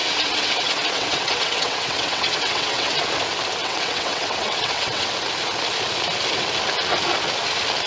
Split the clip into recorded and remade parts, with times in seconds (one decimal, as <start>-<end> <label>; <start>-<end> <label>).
0.0-3.0 remade; 3.0-3.6 recorded; 3.6-5.1 remade; 5.1-7.9 recorded